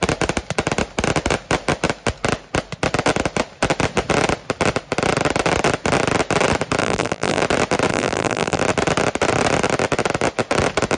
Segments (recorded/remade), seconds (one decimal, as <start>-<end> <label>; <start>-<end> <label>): 0.0-6.8 recorded; 6.8-7.4 remade; 7.4-7.9 recorded; 7.9-8.6 remade; 8.6-11.0 recorded